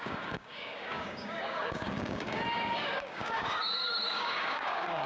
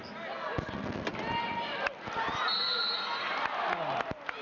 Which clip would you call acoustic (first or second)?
second